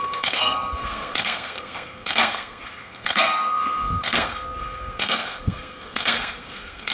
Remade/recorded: remade